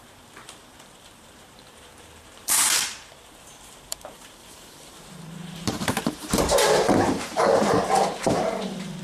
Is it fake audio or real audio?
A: fake